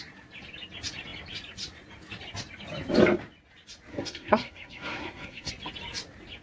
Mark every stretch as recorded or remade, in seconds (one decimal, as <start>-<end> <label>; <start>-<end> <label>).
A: 0.0-3.9 recorded; 3.9-5.5 remade; 5.5-6.4 recorded

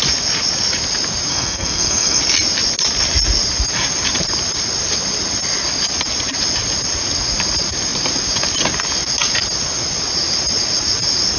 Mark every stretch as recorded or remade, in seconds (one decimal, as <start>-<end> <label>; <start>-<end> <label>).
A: 0.0-1.3 recorded; 1.3-2.2 remade; 2.2-11.4 recorded

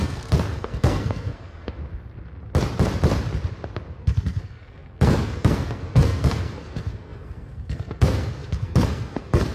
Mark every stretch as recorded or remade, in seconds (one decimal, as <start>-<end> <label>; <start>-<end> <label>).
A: 0.0-1.8 remade; 1.8-4.0 recorded; 4.0-9.5 remade

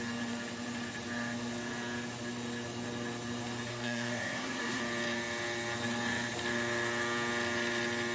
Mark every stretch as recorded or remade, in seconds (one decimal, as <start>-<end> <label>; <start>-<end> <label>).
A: 0.0-3.7 recorded; 3.7-4.8 remade; 4.8-8.1 recorded

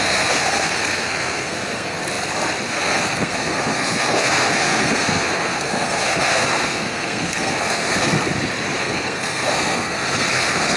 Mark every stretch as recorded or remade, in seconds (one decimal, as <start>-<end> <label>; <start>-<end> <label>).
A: 0.0-2.0 remade; 2.0-2.7 recorded; 2.7-8.1 remade; 8.1-8.8 recorded; 8.8-10.8 remade

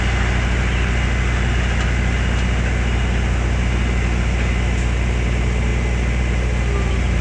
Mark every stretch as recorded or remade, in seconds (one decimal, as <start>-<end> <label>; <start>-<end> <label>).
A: 0.0-7.2 recorded